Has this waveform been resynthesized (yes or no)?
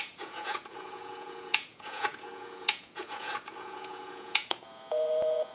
yes